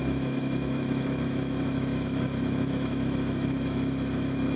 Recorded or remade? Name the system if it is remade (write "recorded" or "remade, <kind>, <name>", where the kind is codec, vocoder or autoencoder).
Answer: remade, autoencoder, DAC-VAE